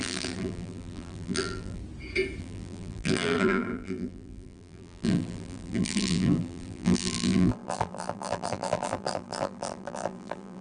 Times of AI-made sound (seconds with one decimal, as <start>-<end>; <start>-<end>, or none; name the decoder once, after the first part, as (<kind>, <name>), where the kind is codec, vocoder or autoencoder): 0.0-1.8 (vocoder, BigVGAN v2); 2.4-10.6